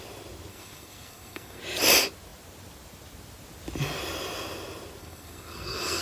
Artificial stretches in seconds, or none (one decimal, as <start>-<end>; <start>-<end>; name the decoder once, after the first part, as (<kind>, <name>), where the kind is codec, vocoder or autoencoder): 0.5-1.6 (codec, SNAC); 5.0-6.0